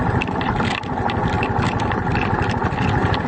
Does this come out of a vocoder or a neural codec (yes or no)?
no